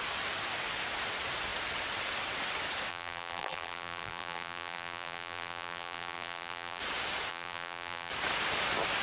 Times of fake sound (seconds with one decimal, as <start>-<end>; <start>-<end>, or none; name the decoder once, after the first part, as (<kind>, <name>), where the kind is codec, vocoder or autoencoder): 2.9-6.8 (vocoder, BigVGAN v2); 7.3-8.1